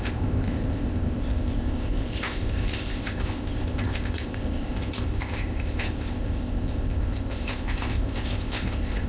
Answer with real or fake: fake